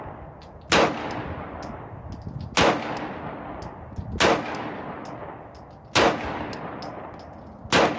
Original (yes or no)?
yes